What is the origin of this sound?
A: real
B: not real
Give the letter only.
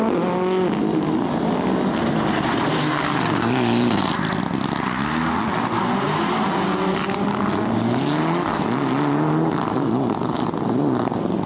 A